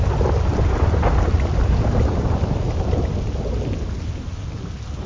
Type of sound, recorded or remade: recorded